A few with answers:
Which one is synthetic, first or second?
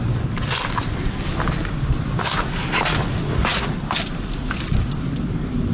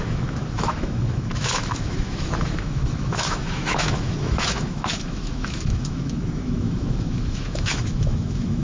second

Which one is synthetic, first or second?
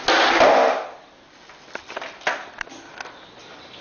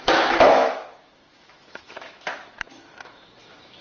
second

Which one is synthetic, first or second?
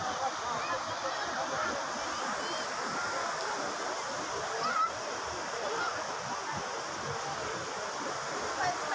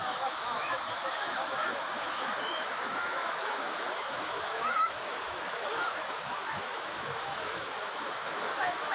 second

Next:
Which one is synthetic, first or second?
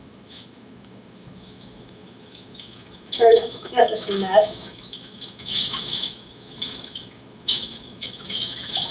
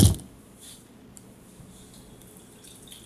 first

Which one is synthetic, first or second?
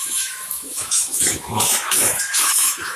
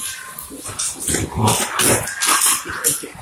first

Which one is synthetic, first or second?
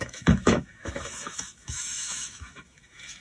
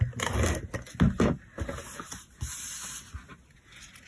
first